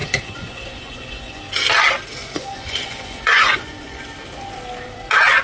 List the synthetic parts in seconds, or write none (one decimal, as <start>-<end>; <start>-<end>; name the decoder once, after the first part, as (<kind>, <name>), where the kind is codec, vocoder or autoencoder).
0.0-1.4 (vocoder, Vocos); 2.2-4.0